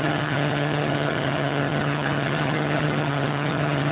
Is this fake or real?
fake